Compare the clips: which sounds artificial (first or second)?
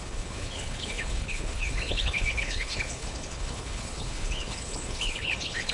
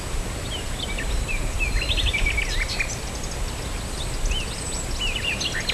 first